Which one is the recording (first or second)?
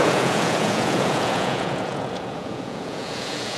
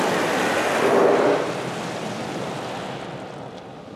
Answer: second